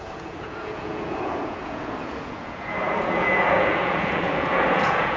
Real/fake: fake